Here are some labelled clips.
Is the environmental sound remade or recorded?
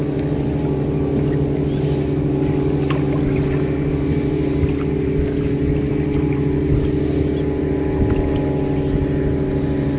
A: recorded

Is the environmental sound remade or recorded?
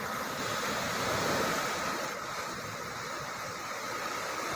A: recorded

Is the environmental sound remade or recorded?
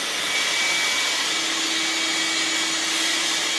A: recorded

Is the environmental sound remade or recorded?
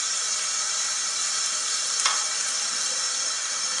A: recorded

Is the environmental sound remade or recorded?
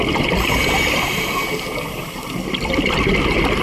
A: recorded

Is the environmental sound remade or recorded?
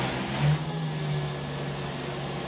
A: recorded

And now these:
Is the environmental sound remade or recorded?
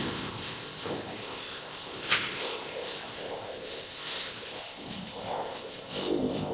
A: remade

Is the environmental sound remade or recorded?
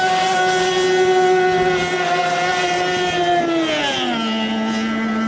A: recorded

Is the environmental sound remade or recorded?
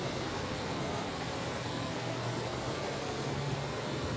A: remade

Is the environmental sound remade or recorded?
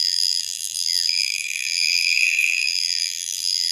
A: remade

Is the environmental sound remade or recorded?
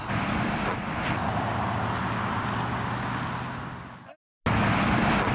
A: recorded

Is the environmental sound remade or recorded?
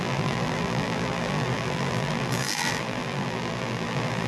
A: remade